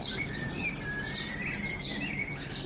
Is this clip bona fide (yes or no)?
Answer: no